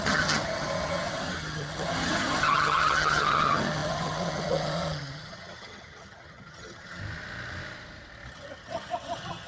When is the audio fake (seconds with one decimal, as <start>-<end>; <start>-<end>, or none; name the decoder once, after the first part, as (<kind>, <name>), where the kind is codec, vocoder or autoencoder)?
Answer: 0.0-7.0 (vocoder, HiFi-GAN); 8.3-9.5